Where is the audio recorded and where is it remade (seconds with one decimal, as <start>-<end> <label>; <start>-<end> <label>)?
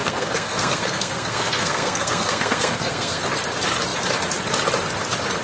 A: 0.0-3.2 remade; 3.2-5.4 recorded